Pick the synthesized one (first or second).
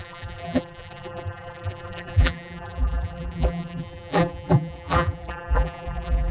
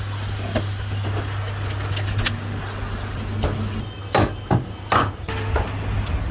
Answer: first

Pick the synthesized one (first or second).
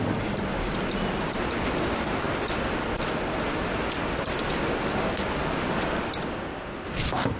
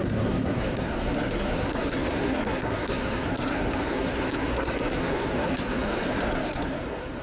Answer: second